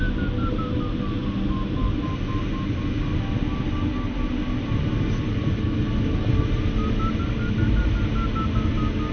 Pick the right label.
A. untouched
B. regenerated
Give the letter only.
A